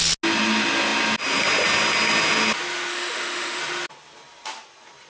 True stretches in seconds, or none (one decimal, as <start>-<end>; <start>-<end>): 0.0-2.9; 3.6-5.1